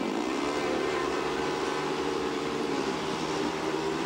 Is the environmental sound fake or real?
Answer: fake